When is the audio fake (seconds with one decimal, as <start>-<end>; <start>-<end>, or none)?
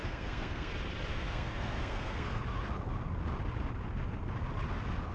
0.0-0.7; 1.1-2.4